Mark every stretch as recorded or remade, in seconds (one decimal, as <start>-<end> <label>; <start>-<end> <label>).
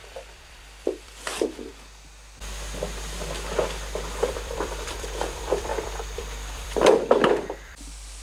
0.0-1.7 remade; 1.7-4.3 recorded; 4.3-8.2 remade